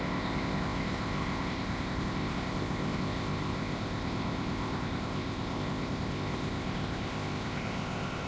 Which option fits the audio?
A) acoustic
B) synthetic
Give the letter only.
B